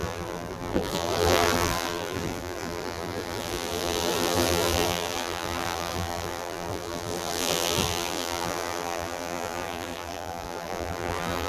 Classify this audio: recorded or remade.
remade